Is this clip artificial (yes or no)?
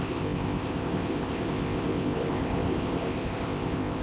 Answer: yes